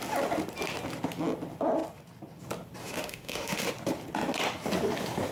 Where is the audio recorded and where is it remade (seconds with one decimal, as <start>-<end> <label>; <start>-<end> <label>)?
0.0-2.8 recorded; 2.8-3.7 remade; 3.7-5.3 recorded